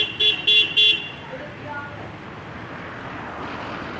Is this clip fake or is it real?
real